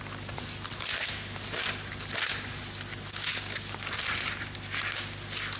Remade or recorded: recorded